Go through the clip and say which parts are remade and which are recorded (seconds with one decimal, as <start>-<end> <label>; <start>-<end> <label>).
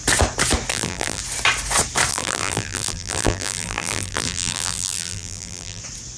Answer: 0.0-0.7 recorded; 0.7-1.2 remade; 1.2-2.1 recorded; 2.1-5.8 remade; 5.8-6.2 recorded